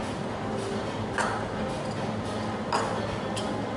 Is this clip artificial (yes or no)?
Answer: no